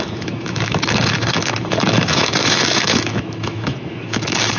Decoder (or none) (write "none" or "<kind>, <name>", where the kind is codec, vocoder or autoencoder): autoencoder, DAC-VAE